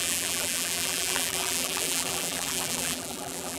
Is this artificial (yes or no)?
yes